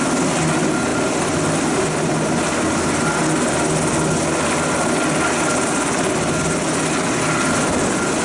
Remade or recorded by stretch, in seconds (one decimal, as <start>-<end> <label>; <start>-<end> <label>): 0.0-8.2 recorded